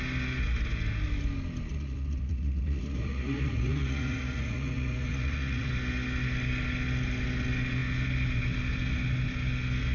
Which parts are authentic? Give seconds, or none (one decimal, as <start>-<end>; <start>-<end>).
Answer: 0.0-1.7; 5.7-9.9